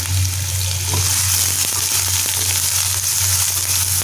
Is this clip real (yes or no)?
yes